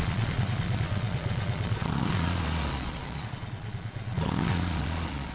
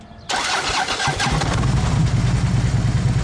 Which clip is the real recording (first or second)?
second